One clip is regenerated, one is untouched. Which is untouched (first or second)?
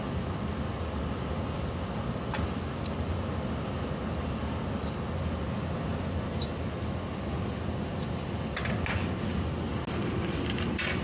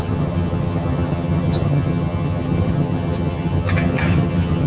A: first